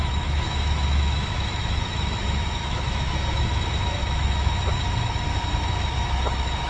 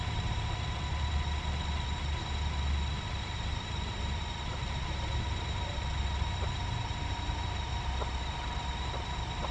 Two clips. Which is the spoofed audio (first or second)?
first